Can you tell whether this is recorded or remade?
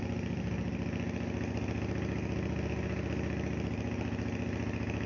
recorded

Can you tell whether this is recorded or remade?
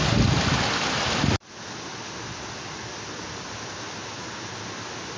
recorded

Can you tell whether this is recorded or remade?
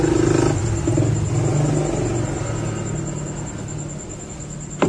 recorded